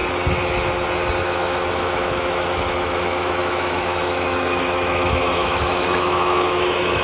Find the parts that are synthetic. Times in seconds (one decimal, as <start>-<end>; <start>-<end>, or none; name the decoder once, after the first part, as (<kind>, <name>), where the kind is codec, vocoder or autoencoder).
1.2-7.0 (autoencoder, DAC-VAE)